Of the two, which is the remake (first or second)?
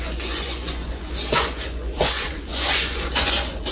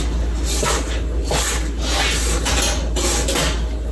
first